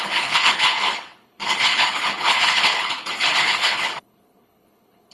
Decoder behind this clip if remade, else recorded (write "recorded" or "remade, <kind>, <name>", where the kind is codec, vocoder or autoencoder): remade, codec, HILCodec